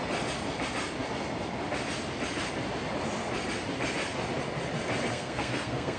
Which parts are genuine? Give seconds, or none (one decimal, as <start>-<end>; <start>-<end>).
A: 0.0-5.1